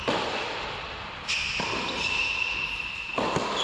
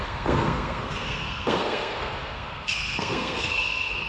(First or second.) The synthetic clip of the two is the second